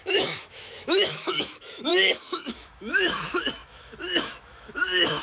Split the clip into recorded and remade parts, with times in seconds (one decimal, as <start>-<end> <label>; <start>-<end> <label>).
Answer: 0.0-5.2 remade